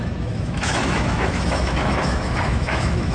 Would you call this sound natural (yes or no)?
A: no